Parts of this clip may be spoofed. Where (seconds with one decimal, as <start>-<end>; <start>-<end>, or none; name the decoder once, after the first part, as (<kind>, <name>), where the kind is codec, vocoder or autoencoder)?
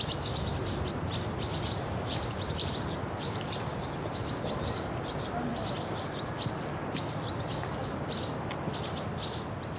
1.5-3.9 (vocoder, BigVGAN v2)